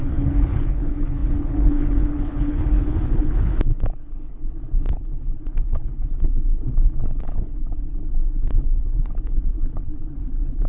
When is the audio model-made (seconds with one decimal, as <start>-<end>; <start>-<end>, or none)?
0.0-10.7